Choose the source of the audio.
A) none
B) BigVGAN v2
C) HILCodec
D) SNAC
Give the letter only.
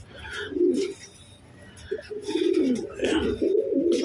A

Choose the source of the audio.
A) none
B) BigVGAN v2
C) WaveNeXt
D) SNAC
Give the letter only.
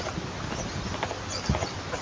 A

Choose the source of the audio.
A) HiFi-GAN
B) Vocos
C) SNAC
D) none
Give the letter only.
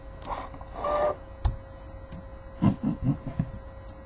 D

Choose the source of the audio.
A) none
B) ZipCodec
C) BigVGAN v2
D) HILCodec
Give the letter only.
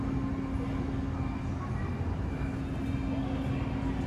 A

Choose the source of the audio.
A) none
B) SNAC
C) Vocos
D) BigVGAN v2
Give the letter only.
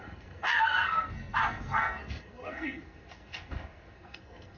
B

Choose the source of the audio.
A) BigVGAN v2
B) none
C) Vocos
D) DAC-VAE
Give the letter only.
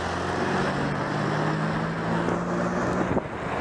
B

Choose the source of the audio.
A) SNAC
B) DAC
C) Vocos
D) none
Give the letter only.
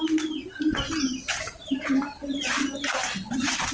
D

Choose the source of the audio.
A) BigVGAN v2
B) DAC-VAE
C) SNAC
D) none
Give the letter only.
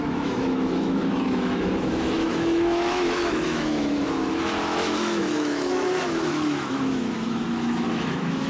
B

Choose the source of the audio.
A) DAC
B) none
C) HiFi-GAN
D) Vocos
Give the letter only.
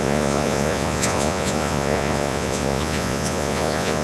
D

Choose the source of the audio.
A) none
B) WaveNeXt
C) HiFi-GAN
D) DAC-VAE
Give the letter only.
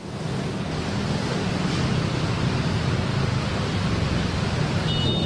A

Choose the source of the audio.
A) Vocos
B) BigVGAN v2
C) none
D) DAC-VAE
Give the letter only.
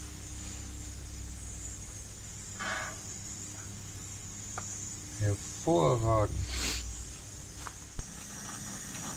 C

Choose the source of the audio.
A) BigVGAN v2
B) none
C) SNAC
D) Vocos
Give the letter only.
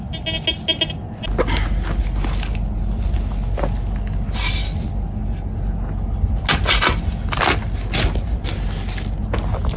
B